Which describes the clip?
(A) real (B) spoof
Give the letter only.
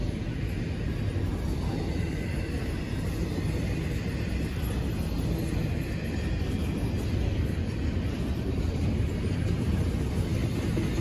A